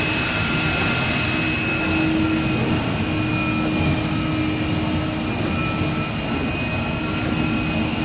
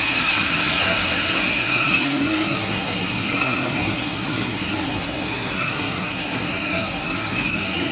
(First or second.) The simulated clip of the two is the second